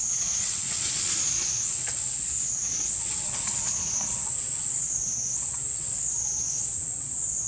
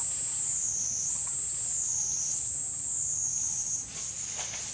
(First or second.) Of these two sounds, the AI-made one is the first